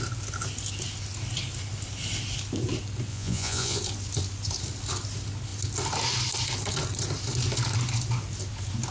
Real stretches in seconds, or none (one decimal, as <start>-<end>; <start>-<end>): 0.0-3.1; 3.8-8.9